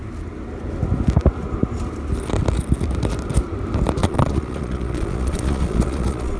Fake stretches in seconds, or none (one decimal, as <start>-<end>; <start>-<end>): 4.0-6.4

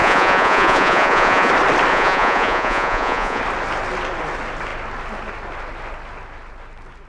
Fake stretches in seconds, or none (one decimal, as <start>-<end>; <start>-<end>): 0.0-1.5; 1.9-3.4

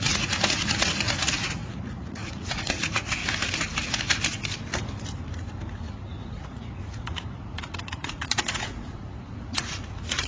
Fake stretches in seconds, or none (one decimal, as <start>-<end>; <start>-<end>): 0.0-3.2; 6.3-10.3

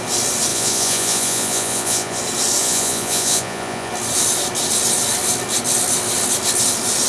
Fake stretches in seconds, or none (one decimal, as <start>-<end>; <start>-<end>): 0.5-2.2; 2.6-3.9

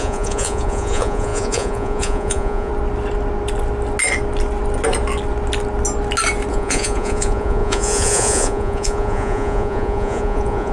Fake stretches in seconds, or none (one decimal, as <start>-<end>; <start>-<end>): 0.0-2.7; 6.5-10.7

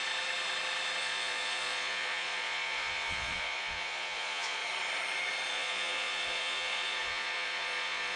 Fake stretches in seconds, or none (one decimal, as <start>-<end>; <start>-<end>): 1.0-4.6; 5.5-8.2

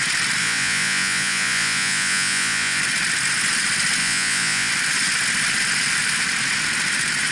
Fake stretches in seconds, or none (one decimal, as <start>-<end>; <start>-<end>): 0.4-2.8; 4.0-4.7

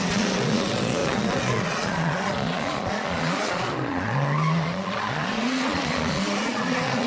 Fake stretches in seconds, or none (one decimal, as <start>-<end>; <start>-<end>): 0.0-7.1